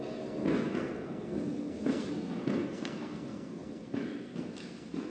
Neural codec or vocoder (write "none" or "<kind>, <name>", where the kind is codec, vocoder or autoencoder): codec, SNAC